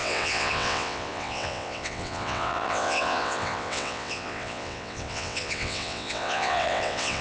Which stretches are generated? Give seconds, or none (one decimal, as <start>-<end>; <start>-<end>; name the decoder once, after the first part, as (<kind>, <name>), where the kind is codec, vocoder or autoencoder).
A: 0.0-7.2 (vocoder, WaveNeXt)